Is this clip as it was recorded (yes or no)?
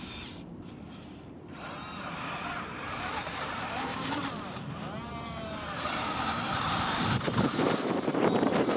no